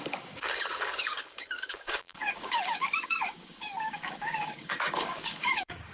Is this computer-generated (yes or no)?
yes